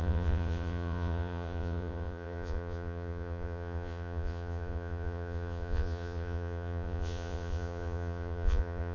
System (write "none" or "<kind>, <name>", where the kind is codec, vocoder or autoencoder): vocoder, Vocos